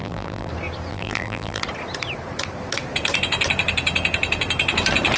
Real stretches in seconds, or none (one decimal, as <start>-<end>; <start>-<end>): 0.5-0.9; 1.6-5.2